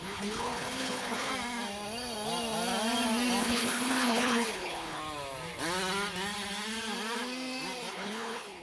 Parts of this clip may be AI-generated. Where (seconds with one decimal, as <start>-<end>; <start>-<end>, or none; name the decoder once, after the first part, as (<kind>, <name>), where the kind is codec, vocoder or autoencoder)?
0.0-1.3 (codec, HILCodec); 3.4-5.0; 7.9-8.6